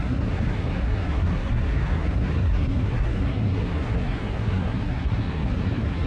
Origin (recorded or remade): remade